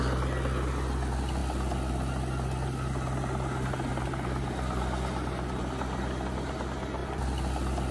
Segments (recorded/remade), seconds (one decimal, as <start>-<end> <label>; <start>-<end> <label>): 0.0-7.9 recorded